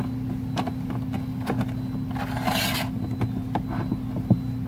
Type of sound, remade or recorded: recorded